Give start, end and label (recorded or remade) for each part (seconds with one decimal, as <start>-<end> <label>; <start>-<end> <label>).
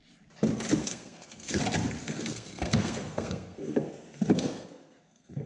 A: 0.0-0.8 recorded; 0.8-1.6 remade; 1.6-2.0 recorded; 2.0-5.5 remade